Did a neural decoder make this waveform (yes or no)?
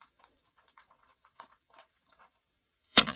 yes